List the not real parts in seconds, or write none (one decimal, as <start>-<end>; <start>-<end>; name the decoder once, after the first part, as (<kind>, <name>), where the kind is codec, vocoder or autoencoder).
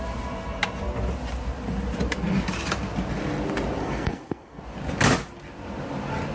3.8-4.6 (codec, SNAC)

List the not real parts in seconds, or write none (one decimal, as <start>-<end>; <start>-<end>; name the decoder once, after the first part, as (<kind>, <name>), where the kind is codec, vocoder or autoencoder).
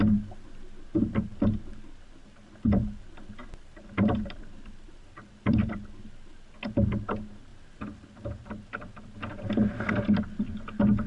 3.4-5.7 (vocoder, BigVGAN v2)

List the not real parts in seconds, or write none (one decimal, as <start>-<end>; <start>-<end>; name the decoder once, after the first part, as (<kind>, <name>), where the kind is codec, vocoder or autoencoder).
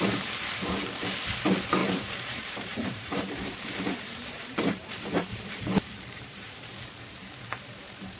1.8-6.7 (vocoder, BigVGAN v2)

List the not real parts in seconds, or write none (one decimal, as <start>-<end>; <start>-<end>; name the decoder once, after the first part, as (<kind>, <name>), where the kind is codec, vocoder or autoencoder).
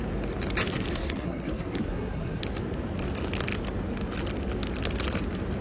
1.0-2.4 (codec, SNAC)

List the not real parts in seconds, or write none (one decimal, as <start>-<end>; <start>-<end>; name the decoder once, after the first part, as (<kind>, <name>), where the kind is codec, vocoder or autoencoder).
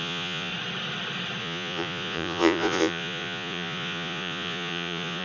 0.0-0.5 (vocoder, Vocos); 1.4-5.2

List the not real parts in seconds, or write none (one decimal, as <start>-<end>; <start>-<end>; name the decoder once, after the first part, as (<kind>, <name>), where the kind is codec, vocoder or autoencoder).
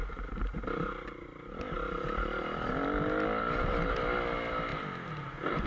none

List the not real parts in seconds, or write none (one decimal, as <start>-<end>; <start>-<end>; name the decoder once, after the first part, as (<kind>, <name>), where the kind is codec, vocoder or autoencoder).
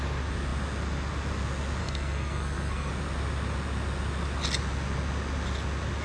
1.8-2.9 (codec, SNAC)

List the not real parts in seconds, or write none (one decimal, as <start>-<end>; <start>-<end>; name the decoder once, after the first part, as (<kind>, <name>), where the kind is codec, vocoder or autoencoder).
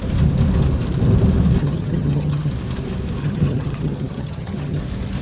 1.6-2.5 (vocoder, HiFi-GAN); 3.2-4.8